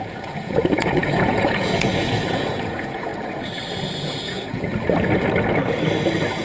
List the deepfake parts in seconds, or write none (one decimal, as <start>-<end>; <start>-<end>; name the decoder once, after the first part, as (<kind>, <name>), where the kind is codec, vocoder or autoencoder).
0.0-3.1 (vocoder, Vocos); 3.7-4.7